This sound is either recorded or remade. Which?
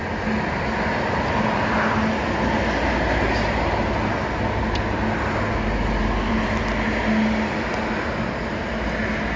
recorded